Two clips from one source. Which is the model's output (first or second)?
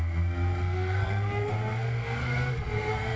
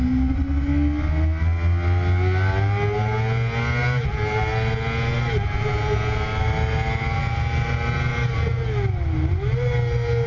first